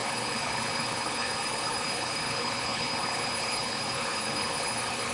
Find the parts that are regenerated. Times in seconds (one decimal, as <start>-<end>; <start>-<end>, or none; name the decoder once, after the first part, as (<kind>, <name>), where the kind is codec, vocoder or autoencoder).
0.0-5.1 (codec, HILCodec)